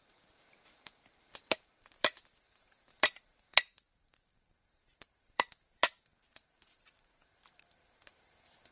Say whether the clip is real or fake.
fake